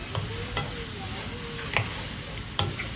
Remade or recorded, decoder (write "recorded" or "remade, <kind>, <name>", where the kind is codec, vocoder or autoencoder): recorded